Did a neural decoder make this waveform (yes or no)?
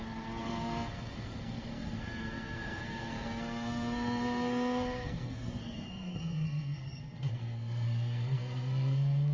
yes